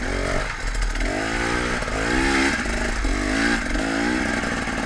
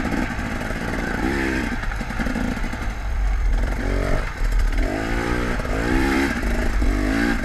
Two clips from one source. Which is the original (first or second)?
first